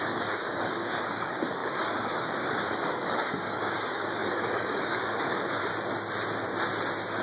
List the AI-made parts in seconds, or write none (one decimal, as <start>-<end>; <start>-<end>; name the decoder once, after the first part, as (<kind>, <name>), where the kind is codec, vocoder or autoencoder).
0.0-5.7 (codec, DAC)

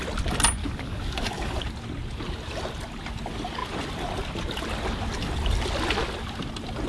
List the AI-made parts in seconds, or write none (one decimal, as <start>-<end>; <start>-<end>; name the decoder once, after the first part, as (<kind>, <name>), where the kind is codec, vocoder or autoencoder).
0.6-1.6 (codec, DAC)

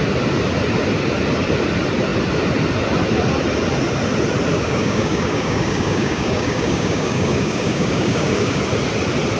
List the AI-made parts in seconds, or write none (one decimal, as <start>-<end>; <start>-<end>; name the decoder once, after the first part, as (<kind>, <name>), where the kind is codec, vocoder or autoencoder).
4.5-8.6 (codec, DAC)